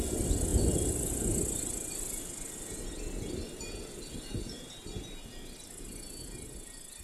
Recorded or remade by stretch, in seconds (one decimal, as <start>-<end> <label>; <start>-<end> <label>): 0.0-7.0 recorded